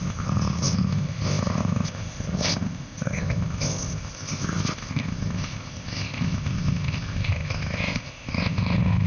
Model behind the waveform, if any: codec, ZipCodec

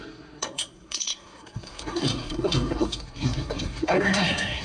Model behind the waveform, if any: codec, SNAC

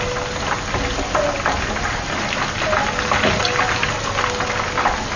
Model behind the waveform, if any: none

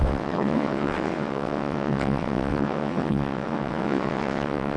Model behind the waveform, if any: vocoder, WaveNeXt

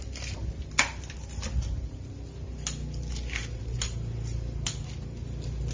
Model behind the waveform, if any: none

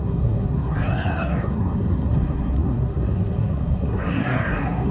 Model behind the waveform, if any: codec, SNAC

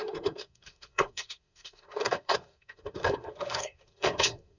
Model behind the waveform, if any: codec, SNAC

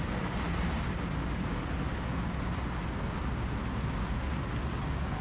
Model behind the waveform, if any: none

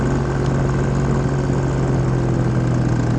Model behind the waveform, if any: none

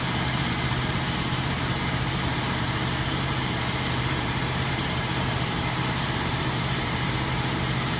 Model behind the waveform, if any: vocoder, BigVGAN v2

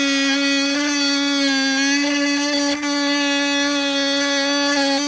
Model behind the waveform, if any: none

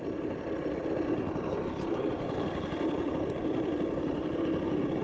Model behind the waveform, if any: none